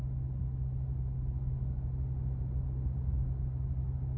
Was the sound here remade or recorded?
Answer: recorded